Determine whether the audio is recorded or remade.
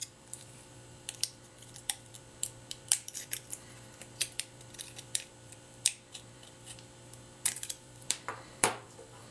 remade